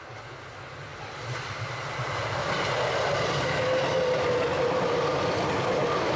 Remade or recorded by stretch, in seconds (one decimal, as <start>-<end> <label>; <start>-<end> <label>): 0.0-0.9 recorded; 0.9-4.6 remade; 4.6-6.2 recorded